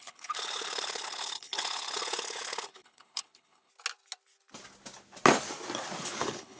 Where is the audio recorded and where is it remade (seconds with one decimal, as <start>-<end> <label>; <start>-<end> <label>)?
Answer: 0.0-3.7 remade; 3.7-6.0 recorded; 6.0-6.6 remade